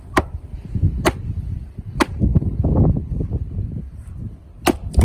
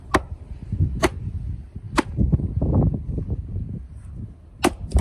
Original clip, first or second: second